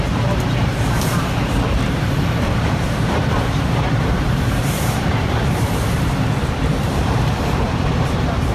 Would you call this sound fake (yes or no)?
yes